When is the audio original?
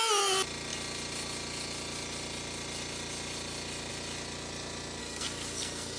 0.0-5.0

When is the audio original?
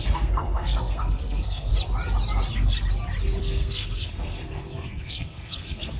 1.7-3.4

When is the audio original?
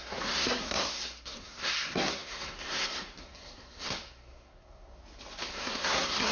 5.0-5.5